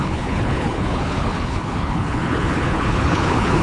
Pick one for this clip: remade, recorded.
remade